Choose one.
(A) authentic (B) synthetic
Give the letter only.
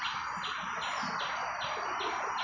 A